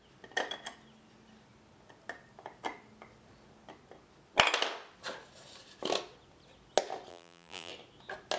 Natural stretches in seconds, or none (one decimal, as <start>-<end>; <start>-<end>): 0.0-7.1; 7.7-8.4